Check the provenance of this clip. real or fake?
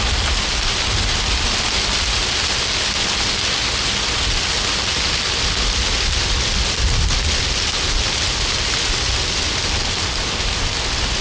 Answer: real